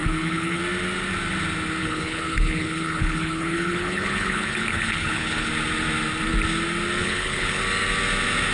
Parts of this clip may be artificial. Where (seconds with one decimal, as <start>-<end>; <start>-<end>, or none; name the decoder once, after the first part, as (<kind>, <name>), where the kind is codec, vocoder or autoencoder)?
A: 0.0-0.6 (codec, HILCodec); 1.8-5.5; 7.0-7.6